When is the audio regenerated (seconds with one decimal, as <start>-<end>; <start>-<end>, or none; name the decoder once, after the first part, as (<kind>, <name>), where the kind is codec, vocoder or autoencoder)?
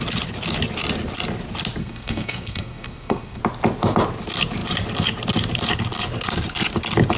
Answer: 1.8-3.4 (codec, SNAC)